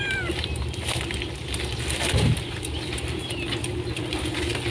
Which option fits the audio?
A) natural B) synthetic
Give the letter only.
A